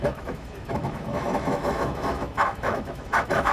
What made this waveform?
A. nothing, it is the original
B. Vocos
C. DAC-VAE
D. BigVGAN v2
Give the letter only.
C